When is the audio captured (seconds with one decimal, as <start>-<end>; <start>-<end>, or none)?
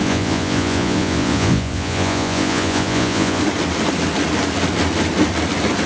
3.4-5.9